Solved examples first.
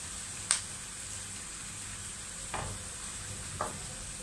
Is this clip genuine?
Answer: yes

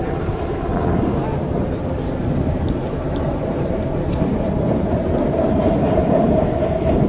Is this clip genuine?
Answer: no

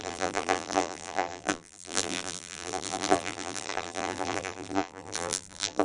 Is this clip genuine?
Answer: no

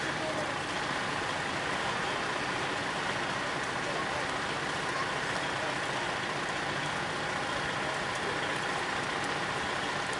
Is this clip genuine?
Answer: yes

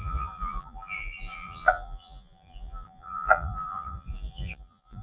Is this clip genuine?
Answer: no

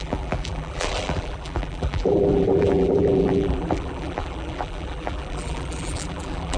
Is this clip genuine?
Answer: no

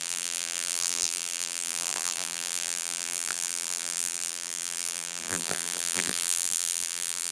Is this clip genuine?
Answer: no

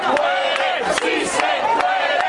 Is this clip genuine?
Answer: yes